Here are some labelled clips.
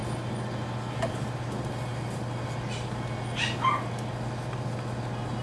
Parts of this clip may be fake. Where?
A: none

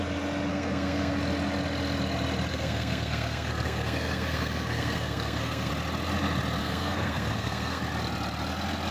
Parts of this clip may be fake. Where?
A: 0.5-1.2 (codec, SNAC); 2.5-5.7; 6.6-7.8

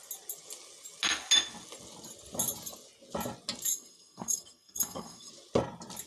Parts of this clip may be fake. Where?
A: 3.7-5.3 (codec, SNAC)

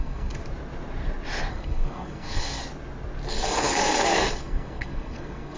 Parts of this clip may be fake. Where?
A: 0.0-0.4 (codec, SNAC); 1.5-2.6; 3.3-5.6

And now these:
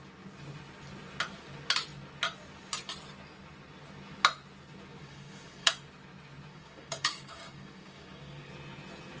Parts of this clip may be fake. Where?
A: 5.0-5.7 (codec, DAC); 6.5-8.5